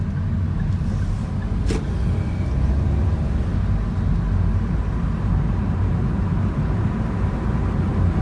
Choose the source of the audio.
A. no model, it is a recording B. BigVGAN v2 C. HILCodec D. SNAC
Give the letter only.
A